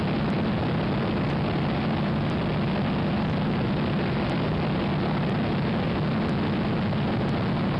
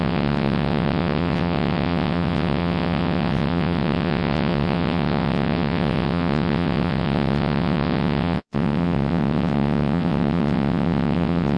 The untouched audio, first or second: first